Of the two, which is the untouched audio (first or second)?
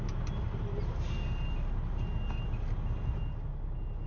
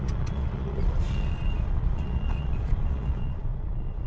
first